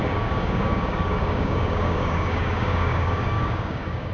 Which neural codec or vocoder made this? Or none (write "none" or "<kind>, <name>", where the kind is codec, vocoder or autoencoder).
codec, DAC